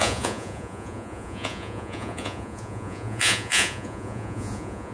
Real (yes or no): no